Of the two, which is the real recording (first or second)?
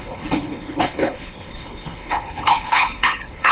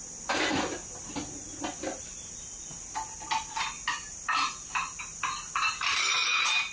second